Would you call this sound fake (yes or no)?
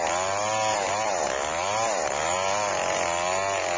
no